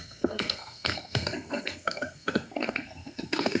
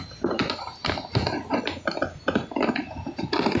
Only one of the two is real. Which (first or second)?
second